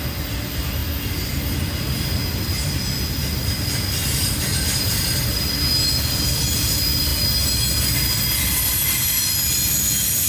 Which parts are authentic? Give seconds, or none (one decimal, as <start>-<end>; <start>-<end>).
0.0-10.3